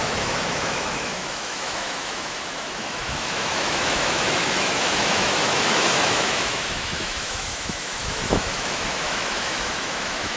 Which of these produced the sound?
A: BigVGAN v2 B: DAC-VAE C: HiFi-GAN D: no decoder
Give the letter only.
B